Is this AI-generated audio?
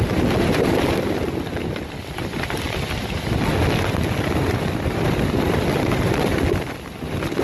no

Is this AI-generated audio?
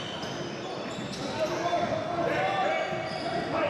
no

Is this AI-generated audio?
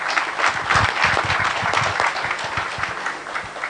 no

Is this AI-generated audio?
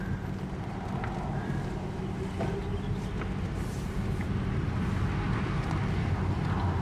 no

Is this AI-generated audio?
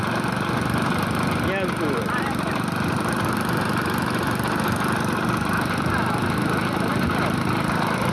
no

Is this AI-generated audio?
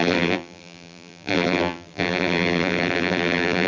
yes